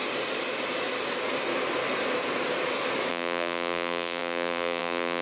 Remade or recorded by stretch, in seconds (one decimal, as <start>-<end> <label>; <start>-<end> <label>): 0.0-3.1 recorded; 3.1-5.2 remade